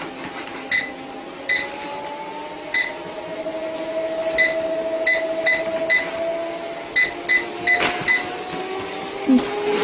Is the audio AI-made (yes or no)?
no